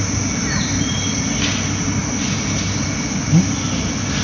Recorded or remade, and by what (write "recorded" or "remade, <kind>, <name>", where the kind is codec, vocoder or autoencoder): recorded